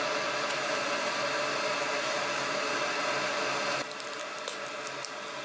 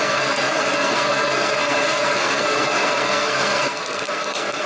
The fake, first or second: second